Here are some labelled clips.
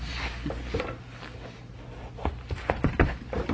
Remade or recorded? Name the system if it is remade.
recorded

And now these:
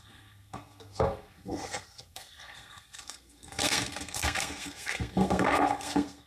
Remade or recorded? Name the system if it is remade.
remade, codec, SNAC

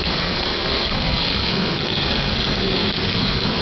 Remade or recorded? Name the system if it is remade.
remade, codec, SNAC